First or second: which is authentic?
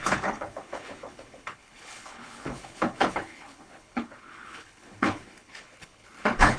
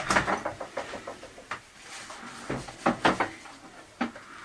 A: second